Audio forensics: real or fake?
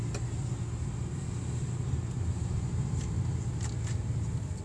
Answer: real